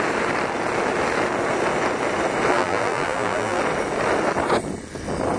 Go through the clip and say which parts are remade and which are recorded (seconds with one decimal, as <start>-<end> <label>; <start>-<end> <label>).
0.0-2.5 recorded; 2.5-3.6 remade; 3.6-5.4 recorded